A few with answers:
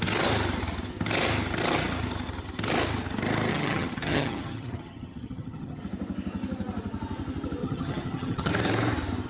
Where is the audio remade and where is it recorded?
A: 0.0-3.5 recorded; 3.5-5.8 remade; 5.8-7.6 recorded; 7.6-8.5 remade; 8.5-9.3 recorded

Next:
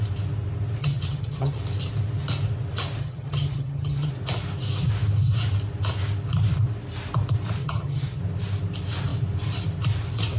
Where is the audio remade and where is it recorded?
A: 0.0-0.8 recorded; 0.8-1.6 remade; 1.6-3.0 recorded; 3.0-4.1 remade; 4.1-7.6 recorded; 7.6-8.2 remade; 8.2-10.4 recorded

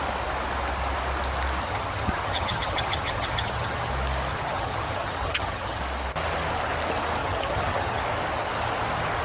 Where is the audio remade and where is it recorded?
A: 0.0-1.6 recorded; 1.6-3.9 remade; 3.9-4.3 recorded; 4.3-5.8 remade; 5.8-7.2 recorded; 7.2-8.0 remade; 8.0-9.2 recorded

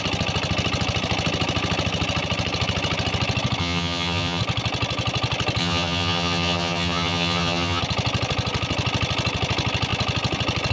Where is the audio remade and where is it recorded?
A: 0.0-3.6 recorded; 3.6-4.4 remade; 4.4-5.6 recorded; 5.6-7.8 remade; 7.8-10.7 recorded

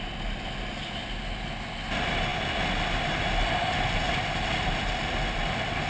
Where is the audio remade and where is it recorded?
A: 0.0-5.9 recorded

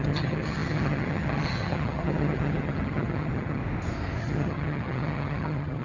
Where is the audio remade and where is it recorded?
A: 0.0-3.6 remade; 3.6-4.2 recorded; 4.2-5.8 remade

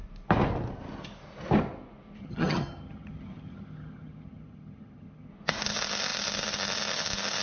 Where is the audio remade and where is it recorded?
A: 0.0-2.2 recorded; 2.2-5.3 remade; 5.3-7.4 recorded

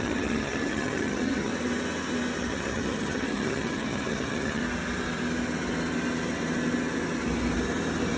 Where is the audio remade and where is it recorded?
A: 0.0-1.5 remade; 1.5-2.4 recorded; 2.4-4.6 remade; 4.6-8.2 recorded